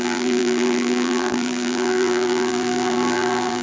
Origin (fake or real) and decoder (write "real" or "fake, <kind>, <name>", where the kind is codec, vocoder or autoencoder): fake, vocoder, BigVGAN v2